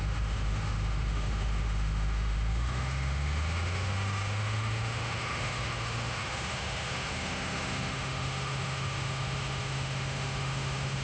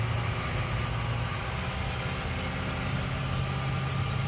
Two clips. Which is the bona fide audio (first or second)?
second